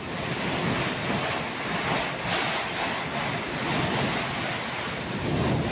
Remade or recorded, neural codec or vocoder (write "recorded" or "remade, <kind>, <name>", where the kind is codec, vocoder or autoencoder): recorded